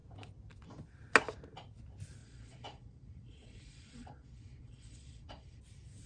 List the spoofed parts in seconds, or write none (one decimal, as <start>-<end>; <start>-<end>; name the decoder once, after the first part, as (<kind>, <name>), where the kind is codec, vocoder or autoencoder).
2.2-5.6 (vocoder, Vocos)